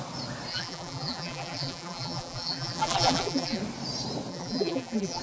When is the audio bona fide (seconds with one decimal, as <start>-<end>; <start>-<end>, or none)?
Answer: 0.0-0.5; 3.6-4.3